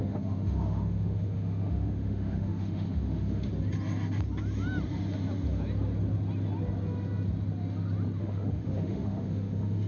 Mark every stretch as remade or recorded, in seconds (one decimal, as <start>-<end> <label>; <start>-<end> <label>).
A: 0.0-3.5 remade; 3.5-8.2 recorded; 8.2-9.9 remade